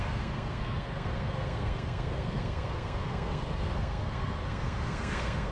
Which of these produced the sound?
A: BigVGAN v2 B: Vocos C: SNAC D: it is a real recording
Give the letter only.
C